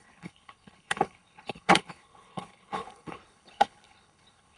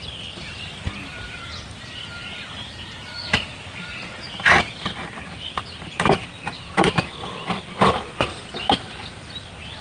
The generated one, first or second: first